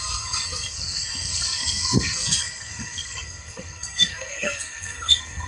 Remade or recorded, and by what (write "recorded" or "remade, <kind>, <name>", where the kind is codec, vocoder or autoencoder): remade, codec, SNAC